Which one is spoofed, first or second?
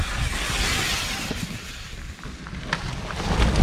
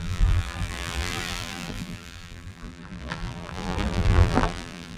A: second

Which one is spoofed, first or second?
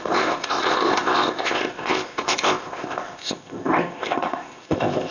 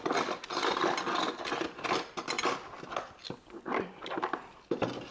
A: first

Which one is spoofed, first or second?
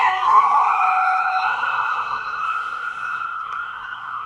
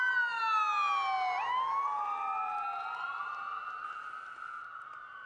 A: first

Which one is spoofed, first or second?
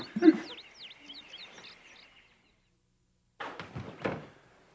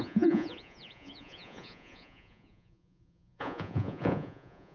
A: second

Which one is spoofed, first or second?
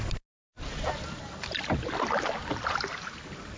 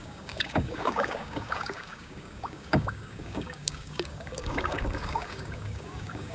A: second